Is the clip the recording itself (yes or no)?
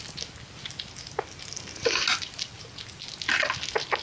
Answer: yes